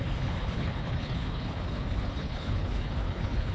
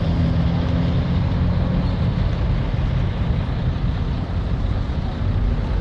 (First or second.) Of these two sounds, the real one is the second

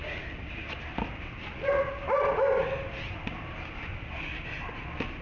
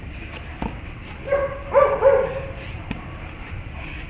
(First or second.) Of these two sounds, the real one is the first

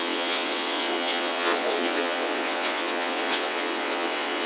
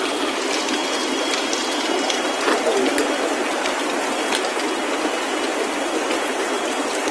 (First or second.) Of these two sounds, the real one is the second